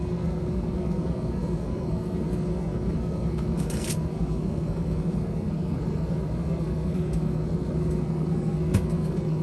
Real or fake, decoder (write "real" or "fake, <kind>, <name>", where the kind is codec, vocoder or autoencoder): fake, codec, SNAC